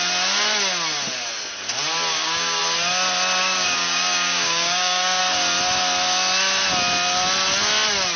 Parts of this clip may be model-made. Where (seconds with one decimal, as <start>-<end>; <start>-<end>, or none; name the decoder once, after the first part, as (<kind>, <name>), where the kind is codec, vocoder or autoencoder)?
2.1-2.6 (codec, DAC); 3.4-5.2